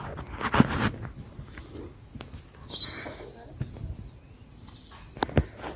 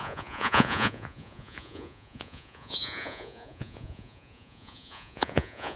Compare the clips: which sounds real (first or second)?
first